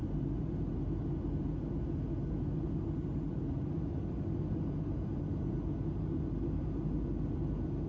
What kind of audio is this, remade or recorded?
recorded